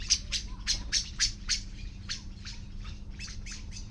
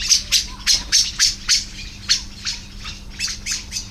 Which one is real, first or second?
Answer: second